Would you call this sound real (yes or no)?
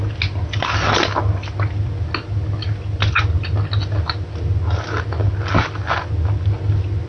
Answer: yes